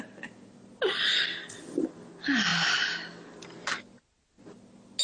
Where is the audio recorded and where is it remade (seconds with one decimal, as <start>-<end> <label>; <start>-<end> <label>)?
0.0-5.0 recorded